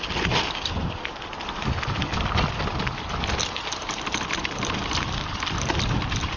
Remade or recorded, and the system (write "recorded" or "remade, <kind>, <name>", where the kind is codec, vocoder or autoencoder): recorded